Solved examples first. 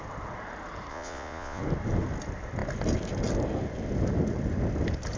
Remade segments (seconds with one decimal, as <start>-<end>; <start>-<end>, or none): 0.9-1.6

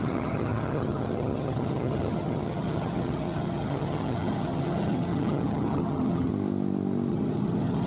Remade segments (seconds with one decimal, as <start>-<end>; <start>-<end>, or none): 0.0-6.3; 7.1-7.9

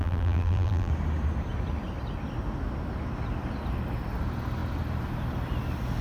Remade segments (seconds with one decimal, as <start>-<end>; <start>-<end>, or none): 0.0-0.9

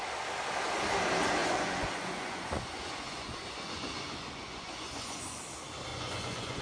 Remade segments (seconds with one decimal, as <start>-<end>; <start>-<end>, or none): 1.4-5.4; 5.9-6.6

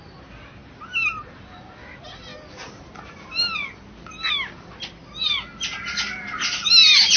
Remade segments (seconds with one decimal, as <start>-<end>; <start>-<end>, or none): 0.6-1.8

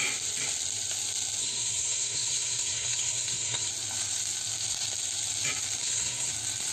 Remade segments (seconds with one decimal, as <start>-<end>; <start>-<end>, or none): 1.4-3.7; 5.8-6.3

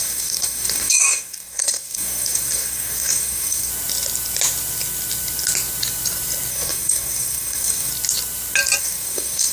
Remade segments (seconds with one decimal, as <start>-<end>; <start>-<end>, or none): 0.0-3.7; 6.5-7.9; 8.8-9.5